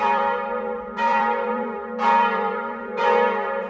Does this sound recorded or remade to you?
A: remade